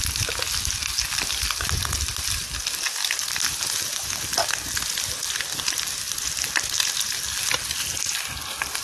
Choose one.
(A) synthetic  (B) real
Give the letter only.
B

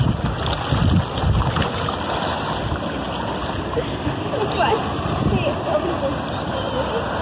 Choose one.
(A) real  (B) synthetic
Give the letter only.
A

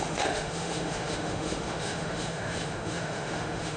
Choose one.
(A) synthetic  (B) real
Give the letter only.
A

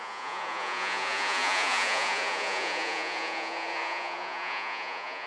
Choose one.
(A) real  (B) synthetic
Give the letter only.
B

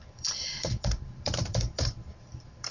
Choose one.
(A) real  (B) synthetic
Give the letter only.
B